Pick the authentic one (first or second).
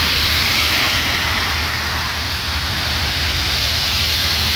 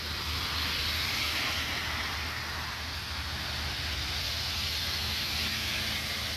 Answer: second